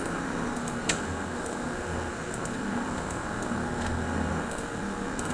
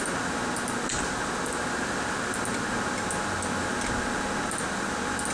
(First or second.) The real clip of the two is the second